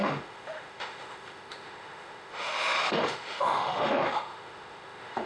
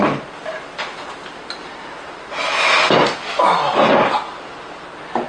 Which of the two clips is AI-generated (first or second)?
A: first